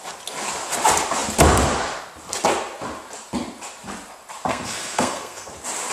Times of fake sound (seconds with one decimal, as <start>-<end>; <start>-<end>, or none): 4.5-5.5